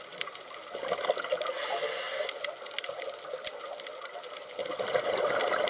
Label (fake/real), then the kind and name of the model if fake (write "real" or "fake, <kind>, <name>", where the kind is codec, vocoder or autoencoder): real